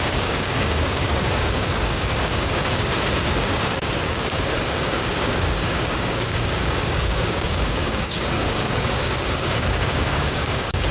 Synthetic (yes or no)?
yes